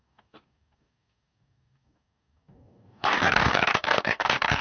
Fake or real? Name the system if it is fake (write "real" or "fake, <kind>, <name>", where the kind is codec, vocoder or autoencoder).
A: fake, codec, DAC